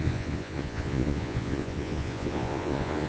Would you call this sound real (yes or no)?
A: no